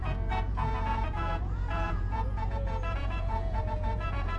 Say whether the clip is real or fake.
fake